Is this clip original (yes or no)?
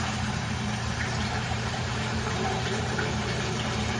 no